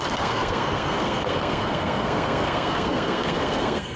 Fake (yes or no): yes